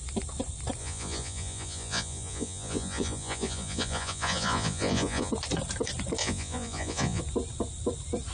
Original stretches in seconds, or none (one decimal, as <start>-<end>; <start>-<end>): 0.0-0.8; 5.3-6.2; 7.2-8.3